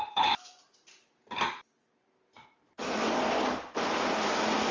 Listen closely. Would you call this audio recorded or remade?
recorded